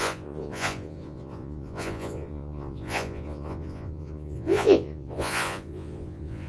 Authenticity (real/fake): fake